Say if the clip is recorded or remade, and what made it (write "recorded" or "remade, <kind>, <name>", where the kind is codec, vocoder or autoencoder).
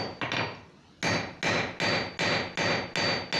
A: recorded